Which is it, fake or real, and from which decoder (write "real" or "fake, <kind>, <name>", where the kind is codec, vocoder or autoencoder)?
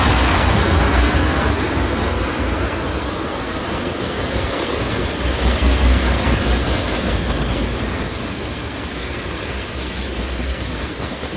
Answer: fake, codec, SNAC